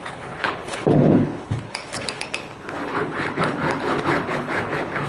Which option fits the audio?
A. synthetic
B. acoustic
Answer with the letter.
A